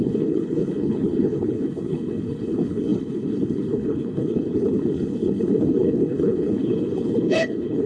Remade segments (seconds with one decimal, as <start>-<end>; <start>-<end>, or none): 0.0-7.9